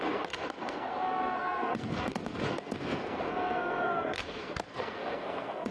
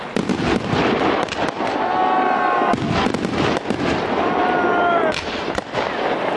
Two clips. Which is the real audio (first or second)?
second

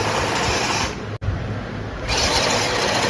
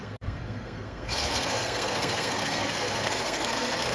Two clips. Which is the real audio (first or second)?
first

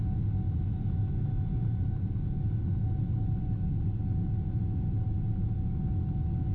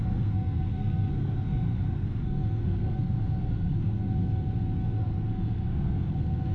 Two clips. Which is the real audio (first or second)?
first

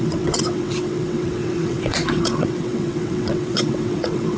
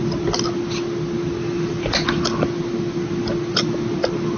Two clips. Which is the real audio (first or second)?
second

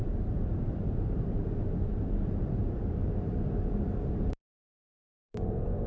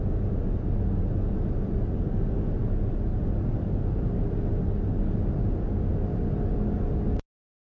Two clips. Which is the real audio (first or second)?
second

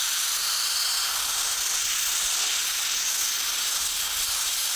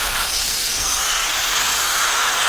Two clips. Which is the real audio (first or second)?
first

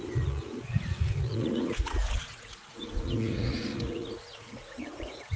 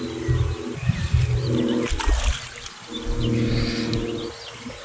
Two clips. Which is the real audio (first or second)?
second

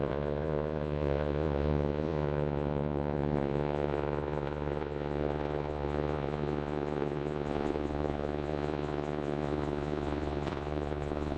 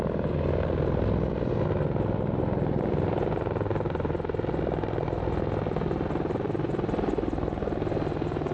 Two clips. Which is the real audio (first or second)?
second